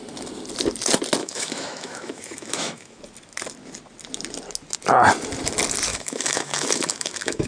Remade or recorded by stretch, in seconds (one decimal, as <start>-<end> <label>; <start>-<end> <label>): 0.0-1.2 recorded; 1.2-3.0 remade; 3.0-5.9 recorded; 5.9-7.5 remade